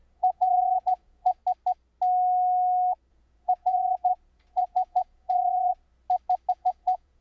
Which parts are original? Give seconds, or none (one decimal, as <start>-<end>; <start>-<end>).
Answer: 1.4-3.1; 5.9-6.5